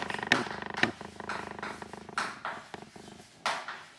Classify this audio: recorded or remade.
recorded